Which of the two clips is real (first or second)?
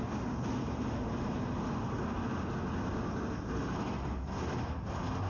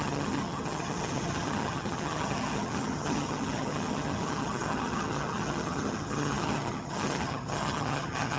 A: first